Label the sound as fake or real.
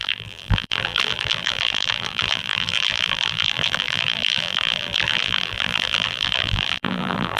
fake